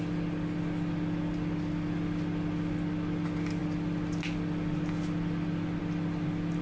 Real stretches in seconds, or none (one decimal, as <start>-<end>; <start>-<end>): 0.0-6.6